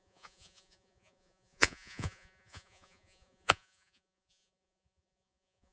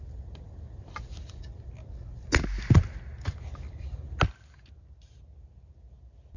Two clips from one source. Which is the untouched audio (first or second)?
second